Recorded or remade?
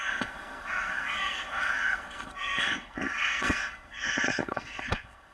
remade